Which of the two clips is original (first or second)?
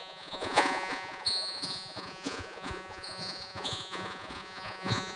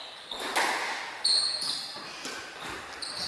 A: second